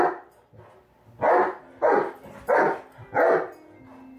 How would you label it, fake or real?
real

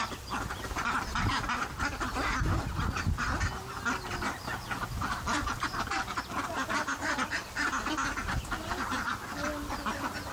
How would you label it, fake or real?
real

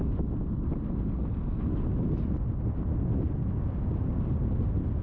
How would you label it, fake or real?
real